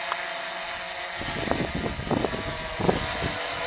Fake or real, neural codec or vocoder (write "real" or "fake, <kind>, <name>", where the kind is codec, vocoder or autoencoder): real